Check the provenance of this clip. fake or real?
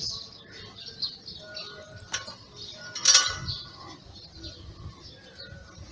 real